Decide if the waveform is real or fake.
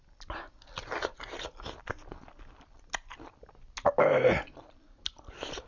real